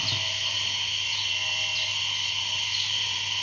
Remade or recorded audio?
recorded